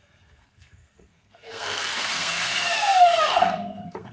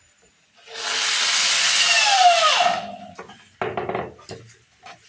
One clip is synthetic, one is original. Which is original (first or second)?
second